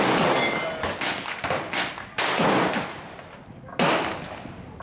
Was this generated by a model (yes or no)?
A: no